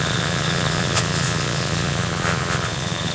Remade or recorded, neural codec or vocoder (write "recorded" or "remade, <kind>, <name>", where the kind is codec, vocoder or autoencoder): remade, vocoder, Vocos